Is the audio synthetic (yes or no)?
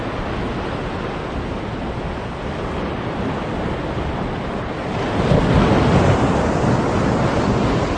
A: no